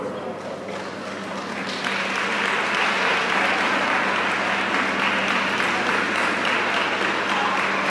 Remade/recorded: recorded